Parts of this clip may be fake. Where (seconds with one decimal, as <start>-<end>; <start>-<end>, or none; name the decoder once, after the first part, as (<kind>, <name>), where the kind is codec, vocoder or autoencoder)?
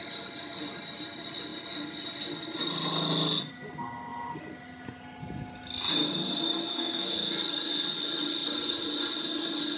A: 6.7-7.3 (codec, SNAC)